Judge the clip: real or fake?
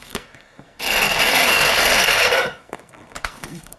fake